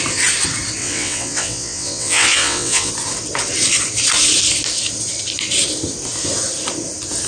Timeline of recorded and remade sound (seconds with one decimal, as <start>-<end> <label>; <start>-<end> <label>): 0.0-0.8 recorded; 0.8-2.9 remade; 2.9-7.3 recorded